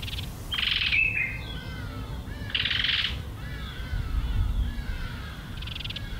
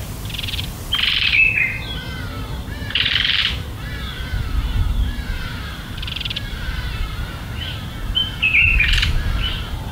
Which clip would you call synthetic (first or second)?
second